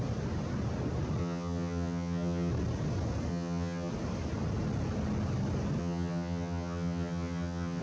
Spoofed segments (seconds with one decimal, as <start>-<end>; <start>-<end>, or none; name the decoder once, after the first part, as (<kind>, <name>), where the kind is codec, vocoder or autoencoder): 1.2-2.5 (vocoder, HiFi-GAN); 3.3-3.9; 5.8-7.8